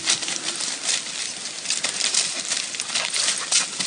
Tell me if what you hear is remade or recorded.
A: recorded